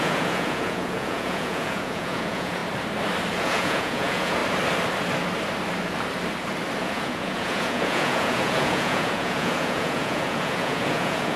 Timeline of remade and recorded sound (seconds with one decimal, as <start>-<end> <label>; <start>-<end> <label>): 0.0-2.6 remade; 2.6-3.4 recorded; 3.4-4.4 remade; 4.4-6.8 recorded; 6.8-11.4 remade